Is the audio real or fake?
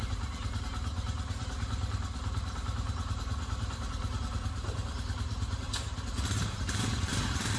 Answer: fake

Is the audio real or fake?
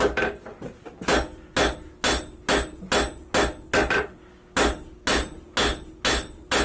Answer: real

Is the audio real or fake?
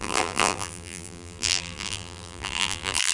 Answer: fake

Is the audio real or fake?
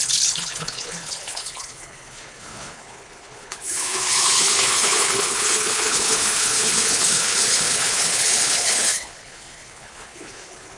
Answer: fake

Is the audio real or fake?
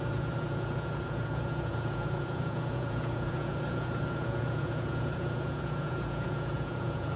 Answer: fake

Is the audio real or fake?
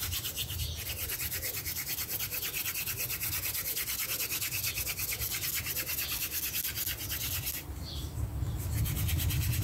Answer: real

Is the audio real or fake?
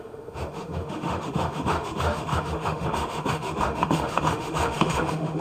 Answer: fake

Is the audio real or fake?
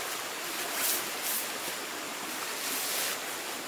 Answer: real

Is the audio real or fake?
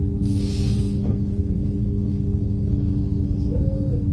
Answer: fake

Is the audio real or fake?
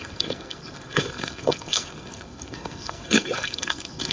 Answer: fake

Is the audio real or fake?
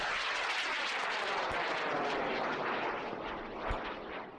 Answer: real